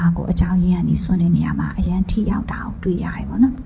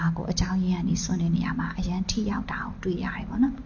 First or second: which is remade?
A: first